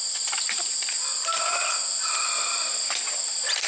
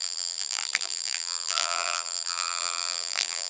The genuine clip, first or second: first